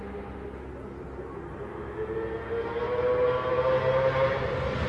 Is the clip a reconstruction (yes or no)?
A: no